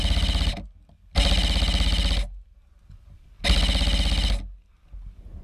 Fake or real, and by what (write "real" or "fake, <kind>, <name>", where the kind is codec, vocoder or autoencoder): real